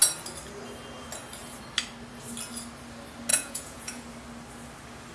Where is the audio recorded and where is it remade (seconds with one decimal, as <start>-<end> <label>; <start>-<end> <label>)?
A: 0.0-3.3 recorded; 3.3-4.0 remade; 4.0-5.1 recorded

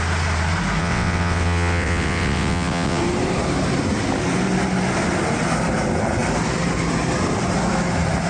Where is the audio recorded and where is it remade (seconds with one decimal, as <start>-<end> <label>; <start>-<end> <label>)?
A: 0.0-0.8 recorded; 0.8-3.0 remade; 3.0-8.3 recorded

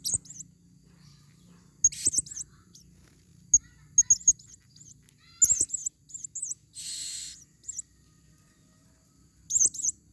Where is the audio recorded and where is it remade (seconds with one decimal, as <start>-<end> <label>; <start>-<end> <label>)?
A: 0.0-10.1 recorded

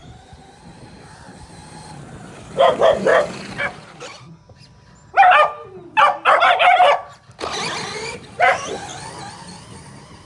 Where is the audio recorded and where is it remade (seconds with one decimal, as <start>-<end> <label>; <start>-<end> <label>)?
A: 0.0-3.1 remade; 3.1-6.5 recorded; 6.5-7.0 remade; 7.0-7.8 recorded; 7.8-8.9 remade; 8.9-9.8 recorded; 9.8-10.3 remade

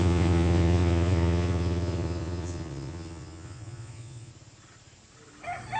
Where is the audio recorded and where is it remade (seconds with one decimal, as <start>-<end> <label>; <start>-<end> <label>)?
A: 0.0-4.3 remade; 4.3-5.8 recorded